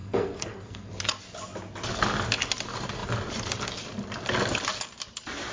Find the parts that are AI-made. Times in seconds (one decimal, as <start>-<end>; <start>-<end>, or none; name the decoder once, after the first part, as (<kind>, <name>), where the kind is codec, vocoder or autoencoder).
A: 0.0-0.9 (codec, SNAC)